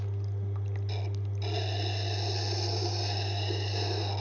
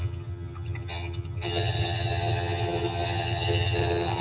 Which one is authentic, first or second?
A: first